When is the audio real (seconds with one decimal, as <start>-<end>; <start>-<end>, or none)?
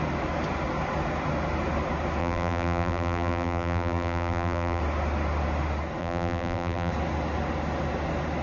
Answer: 0.0-2.2; 4.8-6.0; 6.9-8.4